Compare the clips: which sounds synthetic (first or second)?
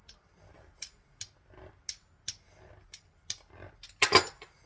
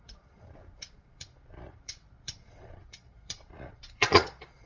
second